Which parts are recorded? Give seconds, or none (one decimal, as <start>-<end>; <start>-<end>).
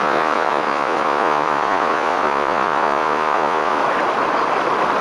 3.8-5.0